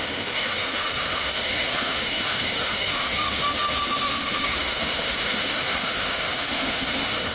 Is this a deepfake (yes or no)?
yes